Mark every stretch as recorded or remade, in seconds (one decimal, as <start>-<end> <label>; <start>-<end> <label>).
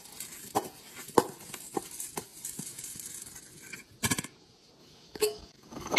0.0-4.8 recorded; 4.8-6.0 remade